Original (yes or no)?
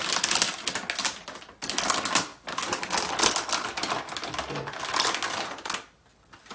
yes